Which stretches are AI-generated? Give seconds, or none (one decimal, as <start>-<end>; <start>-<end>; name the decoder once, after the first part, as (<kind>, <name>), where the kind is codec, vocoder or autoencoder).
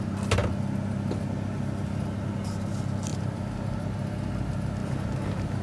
3.1-3.7 (vocoder, BigVGAN v2); 4.8-5.6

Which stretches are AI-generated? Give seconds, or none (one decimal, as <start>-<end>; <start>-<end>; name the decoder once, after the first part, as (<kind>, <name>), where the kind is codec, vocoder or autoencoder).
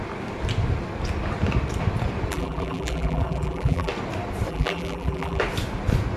2.3-3.9 (vocoder, BigVGAN v2); 4.5-5.4